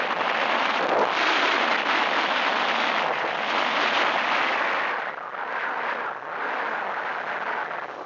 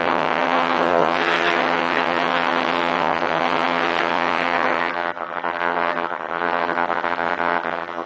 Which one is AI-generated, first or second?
second